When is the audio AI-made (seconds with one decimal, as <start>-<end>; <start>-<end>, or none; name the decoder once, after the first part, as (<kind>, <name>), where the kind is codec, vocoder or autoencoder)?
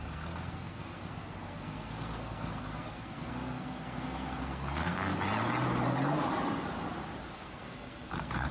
0.0-5.1 (codec, SNAC); 7.3-8.5